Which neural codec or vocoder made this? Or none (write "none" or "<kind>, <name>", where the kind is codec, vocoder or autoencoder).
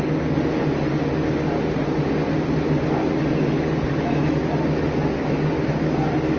none